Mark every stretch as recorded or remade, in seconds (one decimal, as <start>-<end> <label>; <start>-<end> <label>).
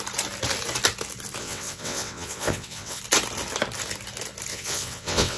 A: 0.0-1.4 recorded; 1.4-3.0 remade; 3.0-4.5 recorded; 4.5-5.4 remade